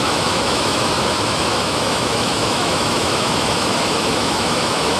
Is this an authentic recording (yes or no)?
no